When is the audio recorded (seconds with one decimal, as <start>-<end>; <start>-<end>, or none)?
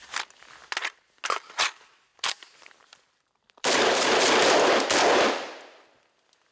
0.0-0.6; 1.2-2.1; 4.2-6.5